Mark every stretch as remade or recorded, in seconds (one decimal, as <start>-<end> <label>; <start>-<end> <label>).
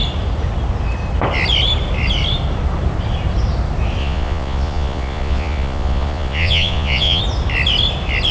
0.0-4.0 recorded; 4.0-7.2 remade; 7.2-8.3 recorded